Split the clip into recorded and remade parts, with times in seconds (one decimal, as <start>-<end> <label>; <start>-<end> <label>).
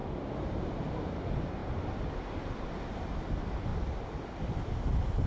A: 0.0-5.3 recorded